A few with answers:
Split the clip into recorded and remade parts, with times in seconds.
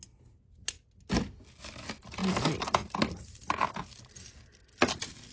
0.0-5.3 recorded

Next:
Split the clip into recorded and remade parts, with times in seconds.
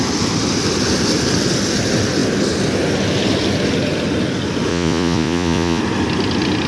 0.0-4.7 recorded; 4.7-5.8 remade; 5.8-6.7 recorded